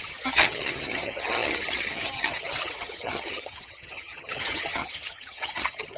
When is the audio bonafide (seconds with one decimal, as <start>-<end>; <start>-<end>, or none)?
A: none